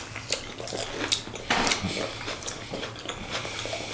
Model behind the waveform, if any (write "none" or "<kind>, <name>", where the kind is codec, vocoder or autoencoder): none